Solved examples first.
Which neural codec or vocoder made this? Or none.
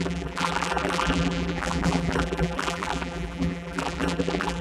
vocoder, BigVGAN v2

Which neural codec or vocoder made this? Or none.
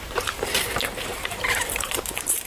vocoder, BigVGAN v2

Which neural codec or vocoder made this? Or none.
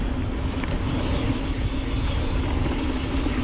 none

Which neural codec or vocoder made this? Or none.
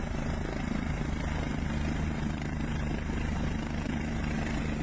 vocoder, BigVGAN v2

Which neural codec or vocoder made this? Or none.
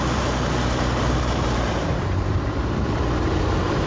vocoder, BigVGAN v2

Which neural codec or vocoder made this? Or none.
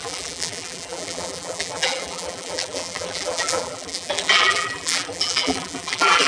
vocoder, BigVGAN v2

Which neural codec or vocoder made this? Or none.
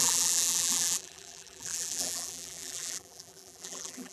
vocoder, BigVGAN v2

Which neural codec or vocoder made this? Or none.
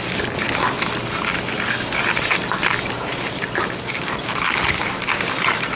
none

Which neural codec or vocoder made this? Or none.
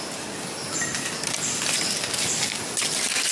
none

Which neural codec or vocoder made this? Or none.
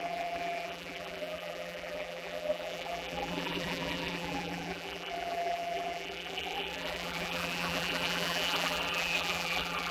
vocoder, BigVGAN v2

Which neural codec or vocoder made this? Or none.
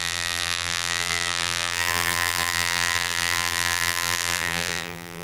vocoder, BigVGAN v2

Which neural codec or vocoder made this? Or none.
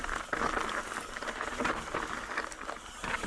none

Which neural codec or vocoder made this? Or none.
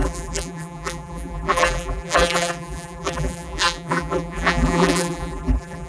vocoder, BigVGAN v2